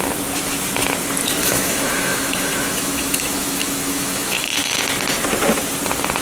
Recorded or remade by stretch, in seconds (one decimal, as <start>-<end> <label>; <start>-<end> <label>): 0.0-1.4 recorded; 1.4-4.8 remade; 4.8-6.2 recorded